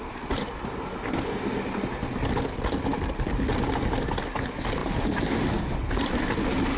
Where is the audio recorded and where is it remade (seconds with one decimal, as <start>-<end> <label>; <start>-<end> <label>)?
0.0-6.8 recorded